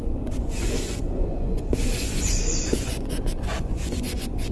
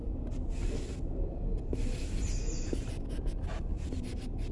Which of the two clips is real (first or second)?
second